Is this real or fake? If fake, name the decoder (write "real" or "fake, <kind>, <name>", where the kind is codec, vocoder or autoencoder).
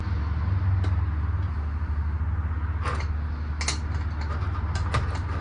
real